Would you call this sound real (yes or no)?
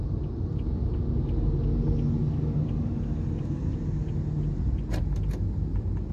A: yes